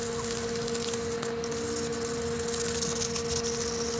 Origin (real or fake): real